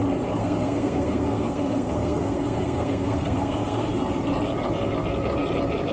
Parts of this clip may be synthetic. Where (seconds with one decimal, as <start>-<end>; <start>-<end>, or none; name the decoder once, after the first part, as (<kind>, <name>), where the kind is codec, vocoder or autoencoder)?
0.4-3.9 (codec, SNAC)